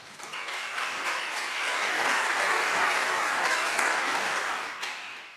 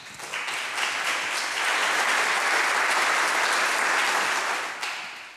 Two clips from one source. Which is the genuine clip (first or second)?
second